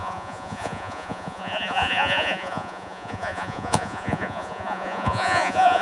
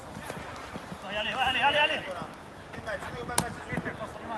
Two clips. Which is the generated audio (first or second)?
first